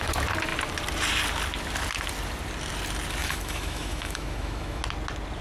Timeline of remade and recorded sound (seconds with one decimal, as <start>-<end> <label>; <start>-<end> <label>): 0.0-3.2 recorded; 3.2-4.8 remade; 4.8-5.4 recorded